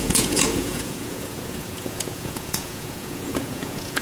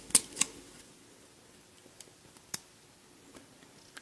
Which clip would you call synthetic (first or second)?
first